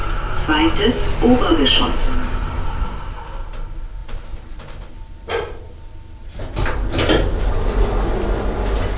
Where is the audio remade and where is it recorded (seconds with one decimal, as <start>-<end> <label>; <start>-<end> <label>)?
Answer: 0.0-1.5 recorded; 1.5-3.1 remade; 3.1-4.0 recorded; 4.0-7.5 remade; 7.5-9.0 recorded